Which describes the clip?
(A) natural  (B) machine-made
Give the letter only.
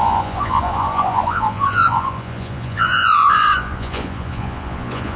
B